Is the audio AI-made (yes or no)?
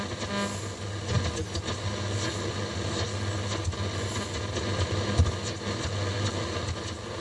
no